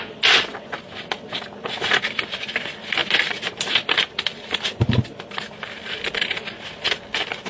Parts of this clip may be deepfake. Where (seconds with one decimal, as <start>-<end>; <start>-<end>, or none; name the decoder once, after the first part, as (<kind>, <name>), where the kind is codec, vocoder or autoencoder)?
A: none